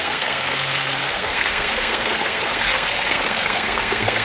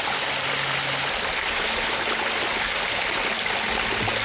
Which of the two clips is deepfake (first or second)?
first